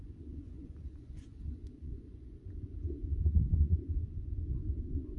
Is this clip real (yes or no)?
no